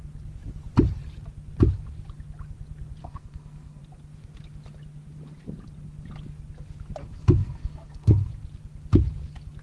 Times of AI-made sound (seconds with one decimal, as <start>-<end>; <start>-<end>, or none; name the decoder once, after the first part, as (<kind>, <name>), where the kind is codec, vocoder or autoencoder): 3.0-3.8 (codec, SNAC); 7.0-8.3